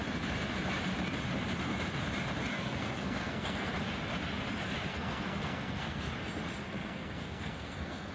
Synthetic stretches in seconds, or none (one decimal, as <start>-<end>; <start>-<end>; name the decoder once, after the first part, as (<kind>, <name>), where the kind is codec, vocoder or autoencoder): 2.5-3.7 (codec, SNAC); 4.9-6.1; 6.6-8.1